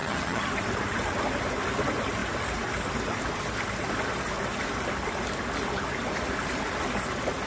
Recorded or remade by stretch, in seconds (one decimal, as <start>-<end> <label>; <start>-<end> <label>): 0.0-0.5 remade; 0.5-7.5 recorded